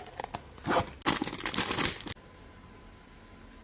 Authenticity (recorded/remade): recorded